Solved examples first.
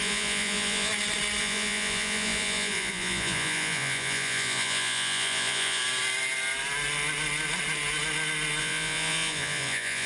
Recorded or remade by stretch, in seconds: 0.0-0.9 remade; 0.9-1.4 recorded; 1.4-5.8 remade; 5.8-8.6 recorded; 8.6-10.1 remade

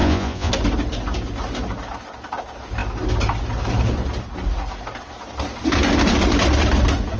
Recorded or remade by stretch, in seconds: 0.0-0.5 remade; 0.5-7.2 recorded

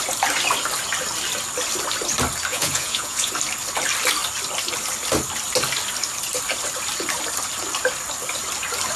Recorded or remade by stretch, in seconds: 0.0-2.5 recorded; 2.5-3.3 remade; 3.3-9.0 recorded

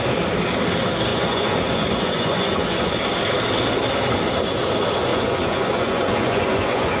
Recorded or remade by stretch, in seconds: 0.0-1.1 recorded; 1.1-3.0 remade; 3.0-5.1 recorded; 5.1-7.0 remade